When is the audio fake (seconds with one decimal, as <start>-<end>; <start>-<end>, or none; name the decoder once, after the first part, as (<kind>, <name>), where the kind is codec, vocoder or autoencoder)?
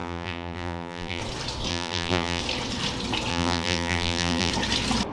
0.0-1.2 (vocoder, BigVGAN v2); 1.7-2.4; 3.3-4.5